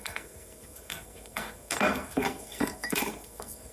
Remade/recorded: remade